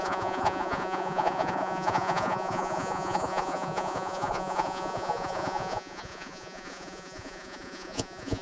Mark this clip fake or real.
fake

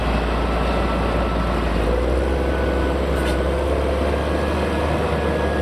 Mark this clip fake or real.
real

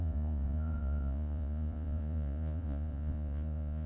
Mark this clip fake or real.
fake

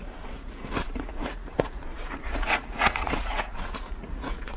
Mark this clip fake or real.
fake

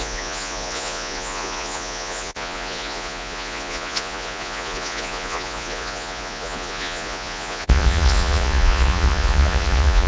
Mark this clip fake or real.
fake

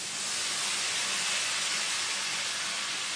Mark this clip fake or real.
fake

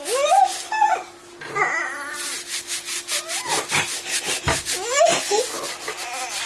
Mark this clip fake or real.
real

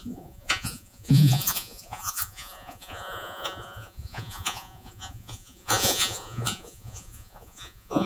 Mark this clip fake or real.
fake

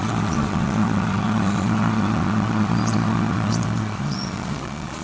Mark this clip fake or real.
fake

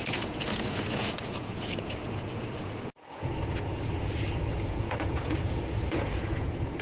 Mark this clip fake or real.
fake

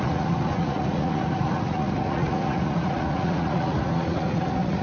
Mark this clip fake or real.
fake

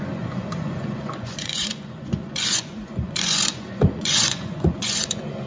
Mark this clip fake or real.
fake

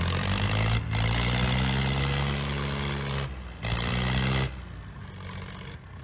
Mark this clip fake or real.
real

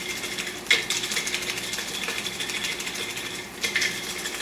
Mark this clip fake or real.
real